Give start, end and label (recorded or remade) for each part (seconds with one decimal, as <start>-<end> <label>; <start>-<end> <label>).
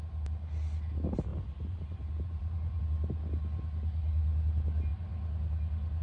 0.0-1.3 recorded; 1.3-2.8 remade; 2.8-6.0 recorded